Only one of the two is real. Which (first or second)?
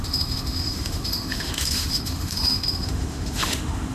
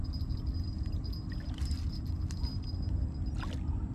second